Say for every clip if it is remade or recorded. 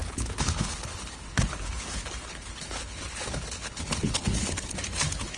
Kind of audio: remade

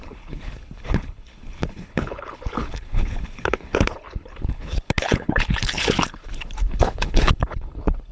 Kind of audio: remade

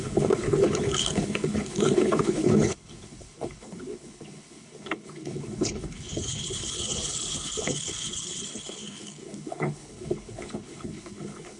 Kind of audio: remade